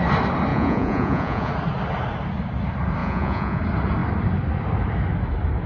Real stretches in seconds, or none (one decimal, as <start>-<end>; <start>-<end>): 0.0-0.5; 1.5-3.0; 3.6-5.7